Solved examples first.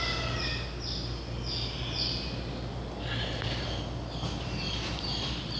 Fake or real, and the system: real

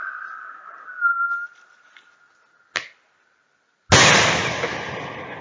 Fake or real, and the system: real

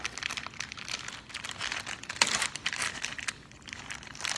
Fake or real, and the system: real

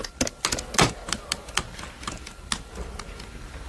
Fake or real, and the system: real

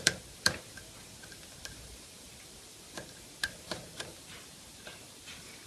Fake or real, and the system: fake, vocoder, BigVGAN v2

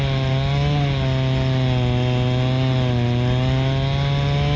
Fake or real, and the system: real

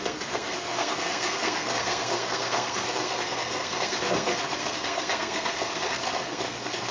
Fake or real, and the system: fake, codec, SNAC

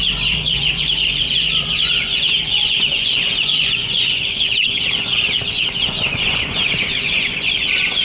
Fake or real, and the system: fake, vocoder, Vocos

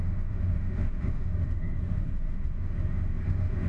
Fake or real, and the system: fake, autoencoder, DAC-VAE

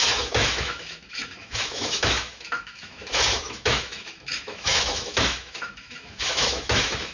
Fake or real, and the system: fake, autoencoder, DAC-VAE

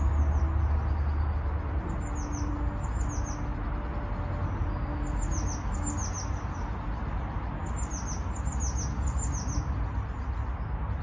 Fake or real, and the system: real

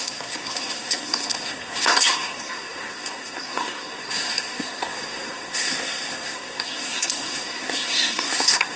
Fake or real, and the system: fake, codec, SNAC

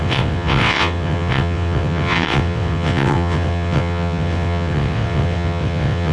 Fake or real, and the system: fake, vocoder, WaveNeXt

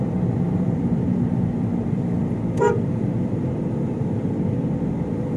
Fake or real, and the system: fake, vocoder, BigVGAN v2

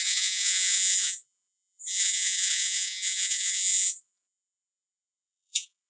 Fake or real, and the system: fake, vocoder, Vocos